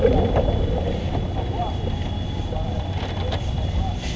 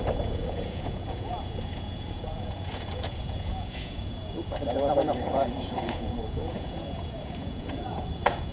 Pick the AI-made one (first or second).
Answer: second